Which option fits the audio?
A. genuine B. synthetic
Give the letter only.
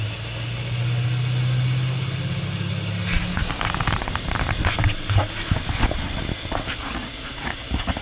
A